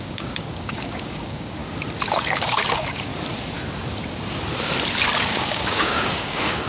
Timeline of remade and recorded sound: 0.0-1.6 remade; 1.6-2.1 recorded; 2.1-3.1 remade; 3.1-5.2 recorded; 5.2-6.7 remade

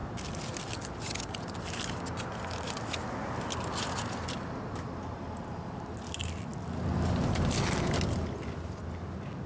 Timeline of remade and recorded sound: 0.0-9.5 recorded

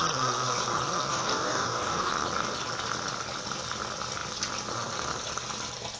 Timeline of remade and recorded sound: 0.0-1.1 recorded; 1.1-2.1 remade; 2.1-6.0 recorded

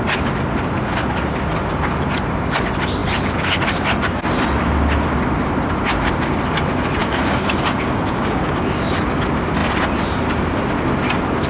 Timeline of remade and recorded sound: 0.0-7.0 recorded; 7.0-8.8 remade; 8.8-11.5 recorded